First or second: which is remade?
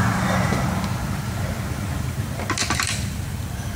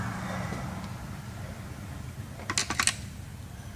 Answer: first